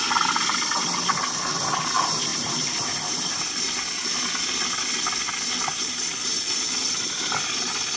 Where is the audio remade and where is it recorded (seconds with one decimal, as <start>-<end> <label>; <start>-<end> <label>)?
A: 0.0-2.3 recorded; 2.3-2.9 remade; 2.9-8.0 recorded